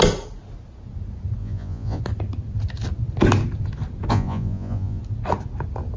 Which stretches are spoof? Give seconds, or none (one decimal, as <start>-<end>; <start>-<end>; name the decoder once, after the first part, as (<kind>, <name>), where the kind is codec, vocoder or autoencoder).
1.4-2.0 (vocoder, Vocos); 4.1-5.0